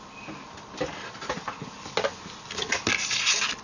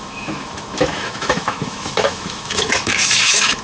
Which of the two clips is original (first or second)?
first